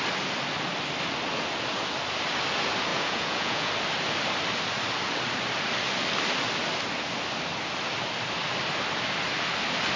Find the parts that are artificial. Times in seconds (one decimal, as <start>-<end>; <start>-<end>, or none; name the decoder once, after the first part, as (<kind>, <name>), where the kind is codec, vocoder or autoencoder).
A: 2.9-3.7 (vocoder, Vocos)